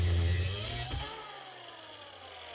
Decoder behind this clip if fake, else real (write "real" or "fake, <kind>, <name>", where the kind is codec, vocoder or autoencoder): real